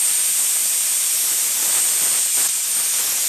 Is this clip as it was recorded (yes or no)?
yes